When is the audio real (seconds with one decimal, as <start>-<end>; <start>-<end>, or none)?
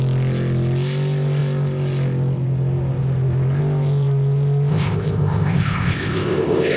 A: 0.0-4.7